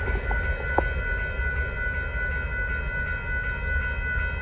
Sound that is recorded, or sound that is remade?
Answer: recorded